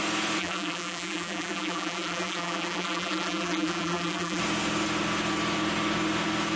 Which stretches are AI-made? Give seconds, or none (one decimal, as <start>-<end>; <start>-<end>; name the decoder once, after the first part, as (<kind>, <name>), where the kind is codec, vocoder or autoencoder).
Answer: 0.4-4.4 (vocoder, BigVGAN v2)